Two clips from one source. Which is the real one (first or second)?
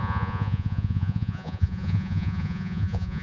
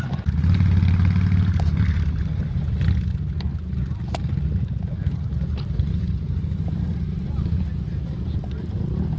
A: second